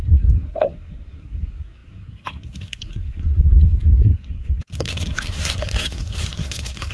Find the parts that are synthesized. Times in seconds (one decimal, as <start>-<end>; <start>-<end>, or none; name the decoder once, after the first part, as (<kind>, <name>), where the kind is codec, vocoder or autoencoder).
0.0-6.9 (codec, SNAC)